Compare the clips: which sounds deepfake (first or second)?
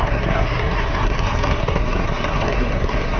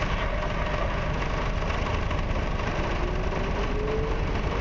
first